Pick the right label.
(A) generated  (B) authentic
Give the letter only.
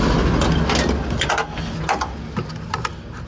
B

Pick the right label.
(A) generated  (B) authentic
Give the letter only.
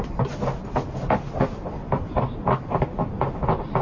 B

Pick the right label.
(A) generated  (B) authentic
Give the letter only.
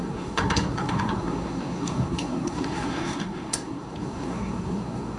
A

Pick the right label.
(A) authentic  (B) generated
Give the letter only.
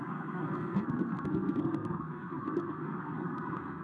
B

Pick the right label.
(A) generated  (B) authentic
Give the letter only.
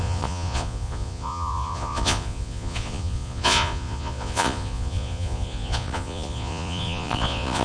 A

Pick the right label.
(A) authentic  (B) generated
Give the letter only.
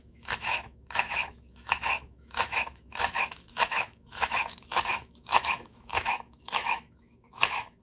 B